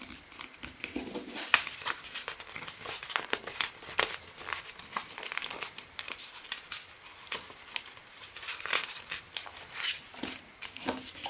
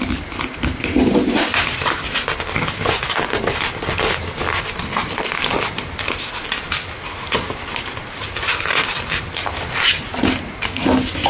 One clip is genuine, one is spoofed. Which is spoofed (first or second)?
first